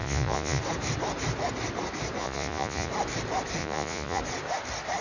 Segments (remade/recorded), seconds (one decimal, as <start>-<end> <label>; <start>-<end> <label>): 0.0-0.6 remade; 0.6-2.2 recorded; 2.2-2.9 remade; 2.9-3.6 recorded; 3.6-4.2 remade; 4.2-5.0 recorded